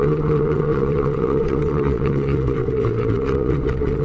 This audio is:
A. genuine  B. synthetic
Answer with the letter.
B